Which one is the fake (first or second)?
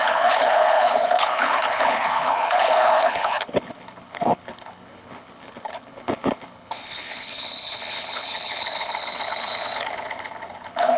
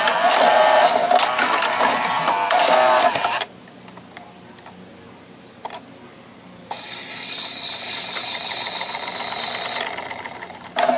first